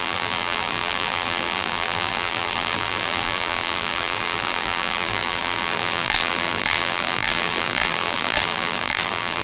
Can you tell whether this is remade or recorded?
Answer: remade